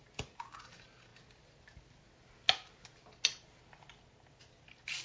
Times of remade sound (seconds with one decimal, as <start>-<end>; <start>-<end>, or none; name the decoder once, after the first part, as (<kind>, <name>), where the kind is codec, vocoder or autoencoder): none